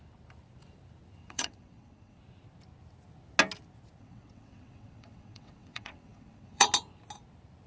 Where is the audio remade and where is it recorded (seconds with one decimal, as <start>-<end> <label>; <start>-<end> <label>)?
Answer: 0.0-1.2 recorded; 1.2-2.2 remade; 2.2-4.0 recorded; 4.0-6.7 remade; 6.7-7.7 recorded